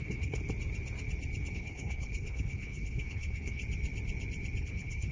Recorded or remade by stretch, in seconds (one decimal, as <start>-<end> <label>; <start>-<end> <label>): 0.0-0.4 remade; 0.4-1.5 recorded; 1.5-3.6 remade; 3.6-4.6 recorded; 4.6-5.1 remade